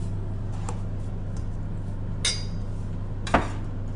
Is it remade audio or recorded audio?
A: recorded